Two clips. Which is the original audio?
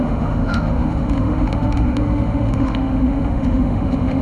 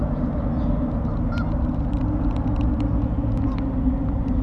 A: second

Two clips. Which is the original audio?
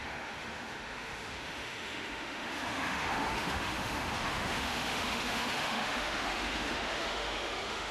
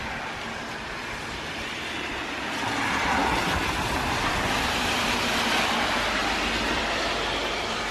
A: second